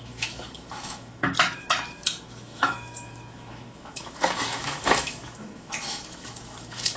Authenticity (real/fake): fake